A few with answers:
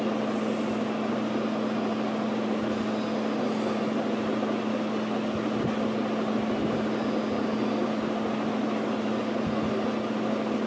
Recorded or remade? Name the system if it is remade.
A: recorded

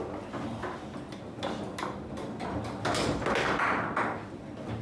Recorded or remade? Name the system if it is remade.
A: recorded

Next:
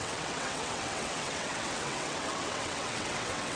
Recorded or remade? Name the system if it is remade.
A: remade, vocoder, WaveNeXt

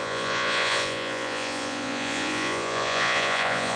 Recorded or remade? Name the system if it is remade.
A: remade, vocoder, Vocos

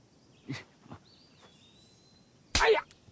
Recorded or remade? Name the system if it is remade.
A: recorded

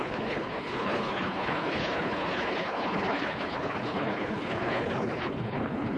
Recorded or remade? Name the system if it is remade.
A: remade, codec, HILCodec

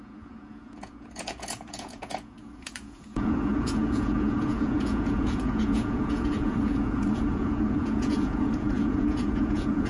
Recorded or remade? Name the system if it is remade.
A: remade, vocoder, Vocos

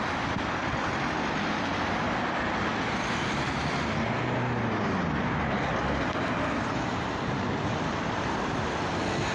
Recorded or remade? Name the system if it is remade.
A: recorded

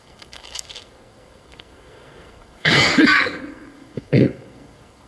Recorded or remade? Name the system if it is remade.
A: remade, codec, SNAC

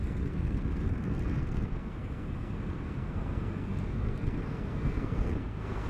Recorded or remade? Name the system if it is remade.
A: remade, codec, SNAC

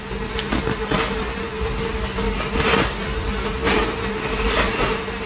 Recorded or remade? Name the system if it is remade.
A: recorded